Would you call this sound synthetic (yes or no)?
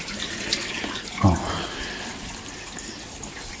no